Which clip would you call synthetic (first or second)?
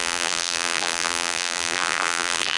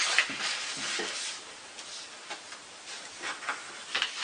first